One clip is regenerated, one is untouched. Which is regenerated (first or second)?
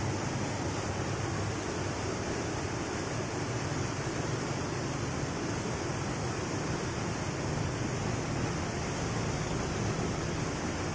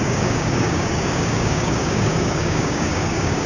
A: second